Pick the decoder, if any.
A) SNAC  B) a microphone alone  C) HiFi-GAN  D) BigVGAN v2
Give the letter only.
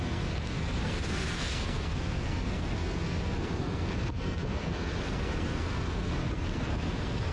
A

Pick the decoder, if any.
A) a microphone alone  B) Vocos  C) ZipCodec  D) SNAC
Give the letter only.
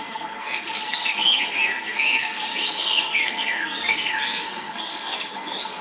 D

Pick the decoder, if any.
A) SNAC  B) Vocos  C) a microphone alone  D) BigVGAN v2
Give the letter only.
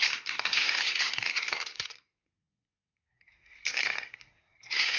A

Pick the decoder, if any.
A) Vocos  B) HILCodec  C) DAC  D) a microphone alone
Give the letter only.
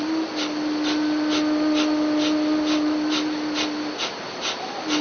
D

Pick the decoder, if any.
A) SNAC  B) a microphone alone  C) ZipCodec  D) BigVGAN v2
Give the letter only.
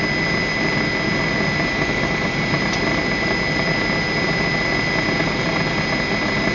B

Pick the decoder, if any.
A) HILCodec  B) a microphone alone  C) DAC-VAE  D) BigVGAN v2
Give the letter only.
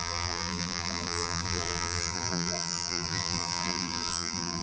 D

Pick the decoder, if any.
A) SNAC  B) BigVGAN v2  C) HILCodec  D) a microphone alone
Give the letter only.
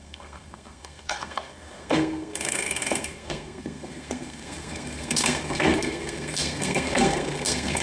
A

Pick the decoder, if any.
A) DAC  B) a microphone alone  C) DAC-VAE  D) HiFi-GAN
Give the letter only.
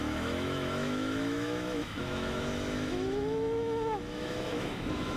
C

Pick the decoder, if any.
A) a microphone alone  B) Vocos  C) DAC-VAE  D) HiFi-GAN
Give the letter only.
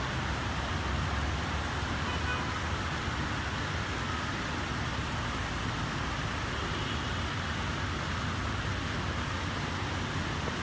A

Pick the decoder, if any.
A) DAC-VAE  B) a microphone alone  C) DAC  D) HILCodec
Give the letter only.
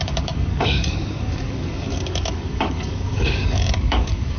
C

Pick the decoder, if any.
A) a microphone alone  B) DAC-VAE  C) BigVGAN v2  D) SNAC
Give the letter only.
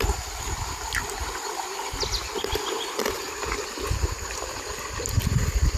A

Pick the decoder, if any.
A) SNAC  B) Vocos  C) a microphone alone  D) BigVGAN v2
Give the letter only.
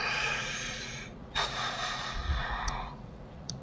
B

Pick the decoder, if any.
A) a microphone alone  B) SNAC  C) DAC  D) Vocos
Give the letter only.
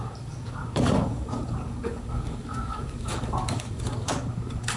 C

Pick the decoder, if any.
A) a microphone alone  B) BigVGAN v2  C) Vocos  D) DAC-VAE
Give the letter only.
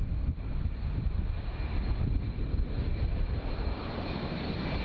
B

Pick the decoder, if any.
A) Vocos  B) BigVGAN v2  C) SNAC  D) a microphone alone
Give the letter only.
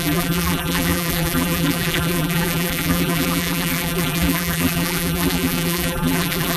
B